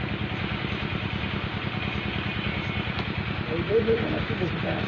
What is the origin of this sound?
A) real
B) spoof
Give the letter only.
A